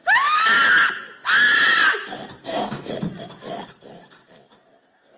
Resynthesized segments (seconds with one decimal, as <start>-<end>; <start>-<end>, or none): 2.4-2.9